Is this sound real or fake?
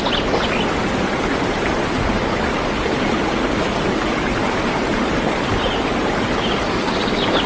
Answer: real